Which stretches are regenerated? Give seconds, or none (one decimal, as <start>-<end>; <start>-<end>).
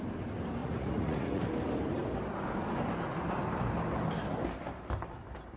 0.6-1.4